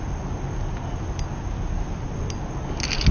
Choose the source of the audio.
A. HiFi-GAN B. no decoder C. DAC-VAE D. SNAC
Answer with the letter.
B